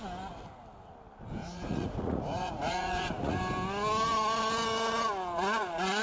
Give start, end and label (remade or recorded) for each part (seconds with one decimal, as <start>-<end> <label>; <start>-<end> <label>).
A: 0.0-1.4 recorded; 1.4-3.4 remade; 3.4-6.0 recorded